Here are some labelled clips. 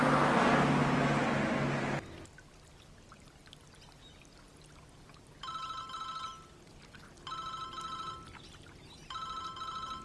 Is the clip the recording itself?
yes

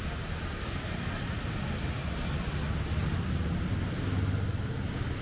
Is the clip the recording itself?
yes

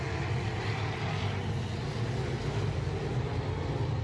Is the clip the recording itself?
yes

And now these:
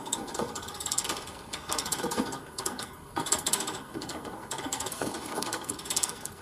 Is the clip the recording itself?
no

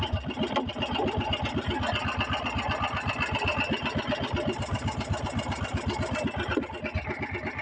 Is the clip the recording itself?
yes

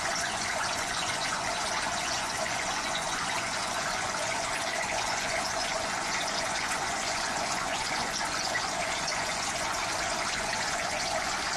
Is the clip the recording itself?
no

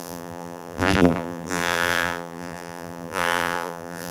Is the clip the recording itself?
no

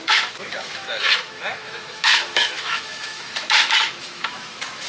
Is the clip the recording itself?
no